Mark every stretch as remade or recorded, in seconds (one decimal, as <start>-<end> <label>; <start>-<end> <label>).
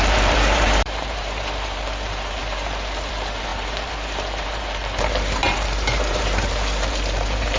0.0-7.6 remade